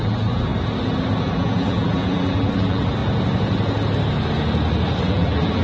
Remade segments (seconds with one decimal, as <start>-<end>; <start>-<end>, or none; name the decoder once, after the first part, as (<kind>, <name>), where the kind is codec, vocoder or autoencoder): 0.0-0.5 (vocoder, BigVGAN v2); 1.2-3.0; 5.1-5.6